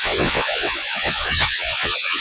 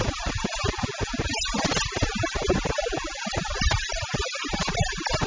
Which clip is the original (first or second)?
second